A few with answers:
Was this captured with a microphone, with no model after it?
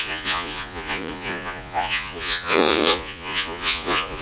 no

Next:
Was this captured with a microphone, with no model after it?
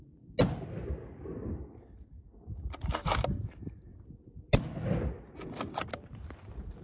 yes